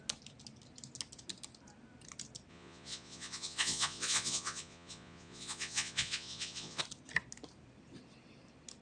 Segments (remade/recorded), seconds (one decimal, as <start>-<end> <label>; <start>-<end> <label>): 0.0-2.5 recorded; 2.5-6.8 remade; 6.8-8.8 recorded